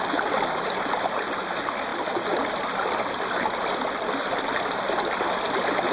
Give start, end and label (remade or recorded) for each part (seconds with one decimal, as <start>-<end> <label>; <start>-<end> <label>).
0.0-5.9 recorded